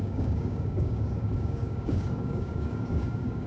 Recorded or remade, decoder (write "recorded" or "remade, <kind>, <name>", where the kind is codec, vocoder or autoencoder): remade, codec, DAC